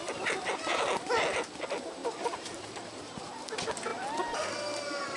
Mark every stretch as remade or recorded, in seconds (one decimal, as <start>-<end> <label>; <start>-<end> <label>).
0.0-2.0 recorded; 2.0-2.6 remade; 2.6-5.2 recorded